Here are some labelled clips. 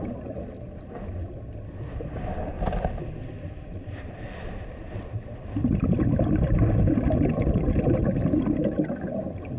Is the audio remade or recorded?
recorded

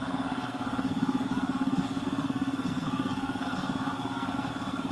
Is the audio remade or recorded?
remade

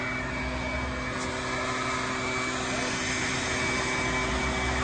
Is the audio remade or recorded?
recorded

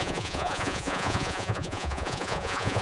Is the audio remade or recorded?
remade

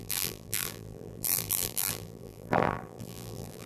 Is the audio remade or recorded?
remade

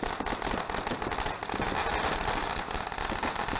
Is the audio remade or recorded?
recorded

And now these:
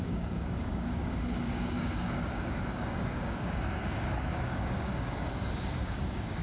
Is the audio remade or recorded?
remade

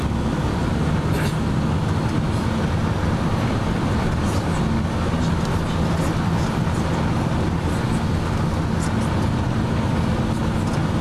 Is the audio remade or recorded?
recorded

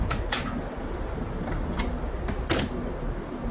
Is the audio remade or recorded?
recorded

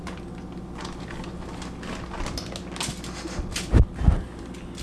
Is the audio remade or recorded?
recorded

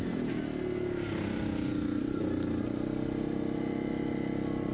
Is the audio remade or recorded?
recorded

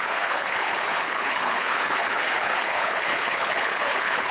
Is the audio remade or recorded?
remade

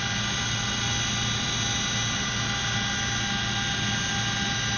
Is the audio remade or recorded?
recorded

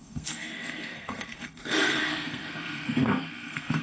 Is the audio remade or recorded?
remade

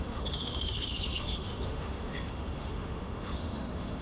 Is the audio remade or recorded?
remade